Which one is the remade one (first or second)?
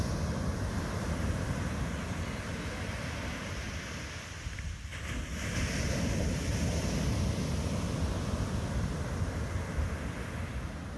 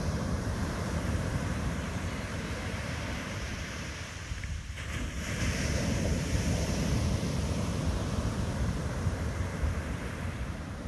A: second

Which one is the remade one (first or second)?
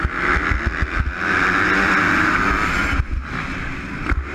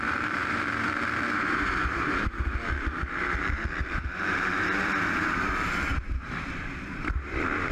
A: second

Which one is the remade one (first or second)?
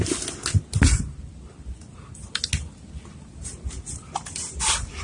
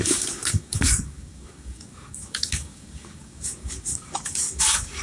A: second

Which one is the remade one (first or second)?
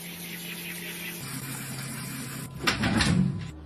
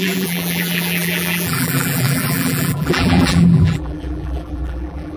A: second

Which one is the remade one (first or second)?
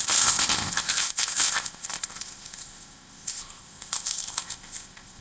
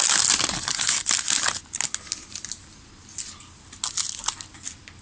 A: first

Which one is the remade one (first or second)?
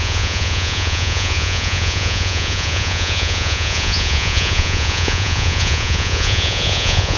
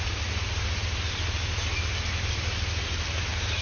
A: first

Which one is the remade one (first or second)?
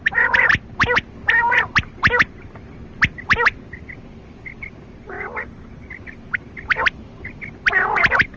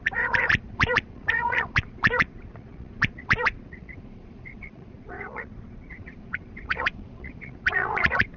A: second